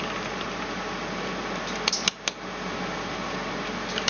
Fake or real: real